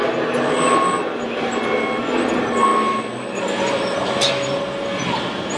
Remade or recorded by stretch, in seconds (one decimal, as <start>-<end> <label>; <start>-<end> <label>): 0.0-5.6 recorded